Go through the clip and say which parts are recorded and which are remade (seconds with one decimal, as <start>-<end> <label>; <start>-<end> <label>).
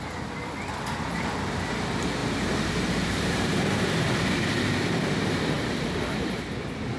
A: 0.0-2.2 recorded; 2.2-6.4 remade; 6.4-7.0 recorded